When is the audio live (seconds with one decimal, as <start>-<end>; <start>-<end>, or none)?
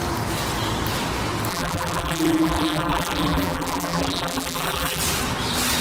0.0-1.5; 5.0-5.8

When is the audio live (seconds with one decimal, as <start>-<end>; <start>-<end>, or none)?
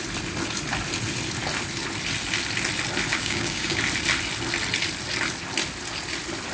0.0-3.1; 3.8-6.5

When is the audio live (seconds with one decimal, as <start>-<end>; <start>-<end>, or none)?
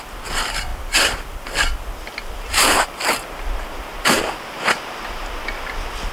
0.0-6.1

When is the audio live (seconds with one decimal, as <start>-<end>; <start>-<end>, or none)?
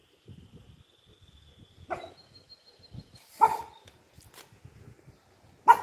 0.0-5.8